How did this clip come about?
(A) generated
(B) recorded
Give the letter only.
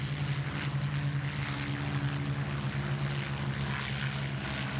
B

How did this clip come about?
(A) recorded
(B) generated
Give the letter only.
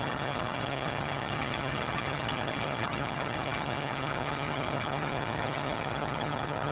B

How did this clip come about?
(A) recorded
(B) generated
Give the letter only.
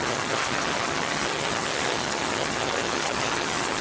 B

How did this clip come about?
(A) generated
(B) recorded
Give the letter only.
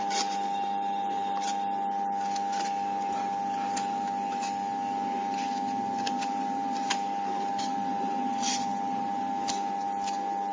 B